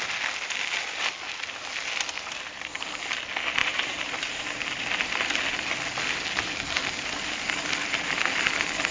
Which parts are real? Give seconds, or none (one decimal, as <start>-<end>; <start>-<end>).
0.0-3.6; 4.4-8.9